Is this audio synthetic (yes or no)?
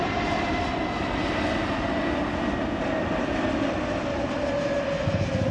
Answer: no